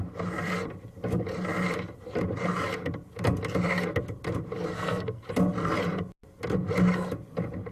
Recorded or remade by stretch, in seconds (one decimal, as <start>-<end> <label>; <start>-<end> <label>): 0.0-4.7 recorded; 4.7-5.2 remade; 5.2-7.7 recorded

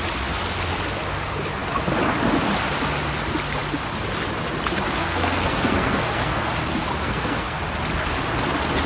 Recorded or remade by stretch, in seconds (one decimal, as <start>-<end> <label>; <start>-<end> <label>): 0.0-5.0 recorded; 5.0-6.5 remade; 6.5-7.0 recorded; 7.0-7.6 remade; 7.6-8.9 recorded